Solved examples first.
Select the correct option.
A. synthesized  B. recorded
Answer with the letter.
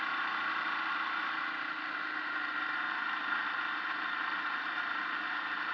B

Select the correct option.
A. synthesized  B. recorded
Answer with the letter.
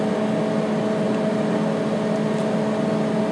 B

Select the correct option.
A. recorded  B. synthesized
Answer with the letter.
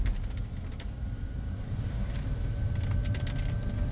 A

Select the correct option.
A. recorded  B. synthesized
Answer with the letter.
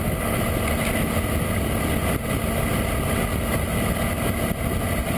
A